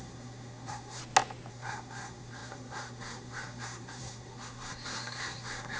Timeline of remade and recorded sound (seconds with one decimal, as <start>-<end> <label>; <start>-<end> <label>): 0.0-1.0 remade; 1.0-1.5 recorded; 1.5-5.8 remade